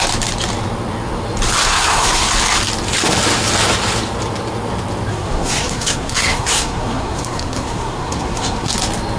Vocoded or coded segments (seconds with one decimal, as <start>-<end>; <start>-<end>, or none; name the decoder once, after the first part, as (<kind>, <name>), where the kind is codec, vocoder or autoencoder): 1.7-2.3 (codec, SNAC); 5.1-8.7